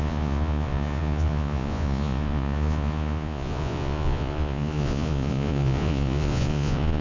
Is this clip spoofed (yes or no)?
yes